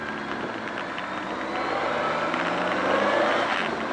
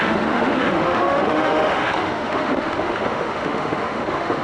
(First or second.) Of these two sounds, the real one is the first